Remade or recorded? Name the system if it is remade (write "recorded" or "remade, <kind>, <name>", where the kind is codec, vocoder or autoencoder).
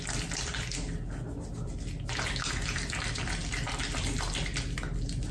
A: recorded